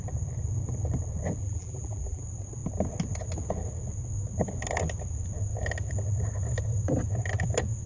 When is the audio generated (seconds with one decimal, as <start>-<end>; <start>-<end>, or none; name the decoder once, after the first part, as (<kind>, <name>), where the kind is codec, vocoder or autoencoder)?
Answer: 1.4-2.2 (vocoder, BigVGAN v2)